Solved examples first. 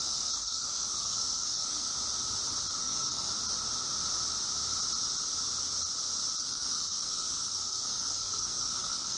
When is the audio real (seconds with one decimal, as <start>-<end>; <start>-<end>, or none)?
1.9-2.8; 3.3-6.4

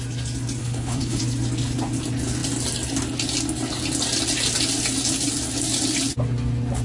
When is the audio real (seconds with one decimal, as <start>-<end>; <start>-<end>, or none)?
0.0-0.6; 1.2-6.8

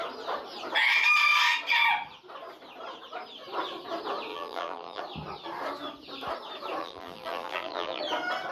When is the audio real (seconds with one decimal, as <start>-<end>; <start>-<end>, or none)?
0.0-4.3; 5.0-6.8; 8.0-8.5

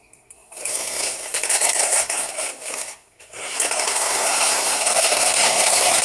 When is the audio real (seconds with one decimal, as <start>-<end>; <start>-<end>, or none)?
none

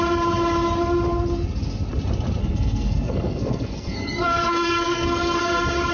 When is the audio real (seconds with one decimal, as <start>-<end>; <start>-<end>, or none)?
0.0-2.4; 5.4-5.9